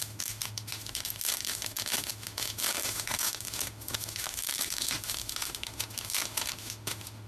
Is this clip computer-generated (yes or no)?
yes